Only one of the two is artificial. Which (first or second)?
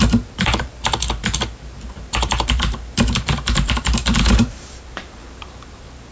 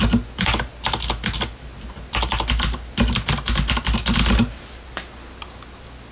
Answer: first